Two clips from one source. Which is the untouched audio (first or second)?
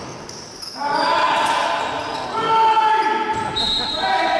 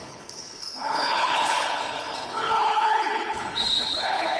first